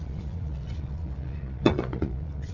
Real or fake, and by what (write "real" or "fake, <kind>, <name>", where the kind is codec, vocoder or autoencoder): fake, vocoder, Vocos